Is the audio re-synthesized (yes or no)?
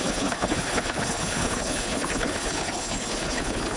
yes